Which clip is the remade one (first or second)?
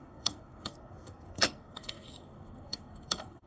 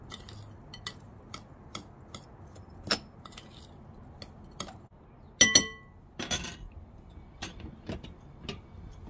first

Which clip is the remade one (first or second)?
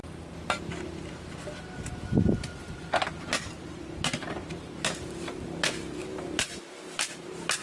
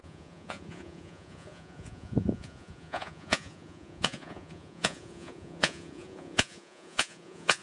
second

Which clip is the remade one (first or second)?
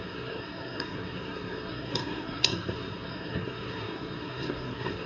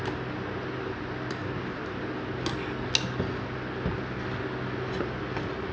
first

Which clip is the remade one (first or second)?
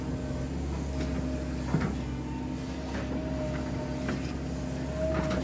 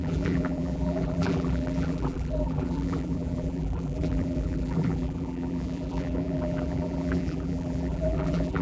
second